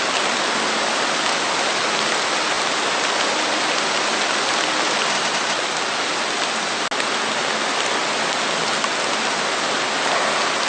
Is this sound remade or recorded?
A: recorded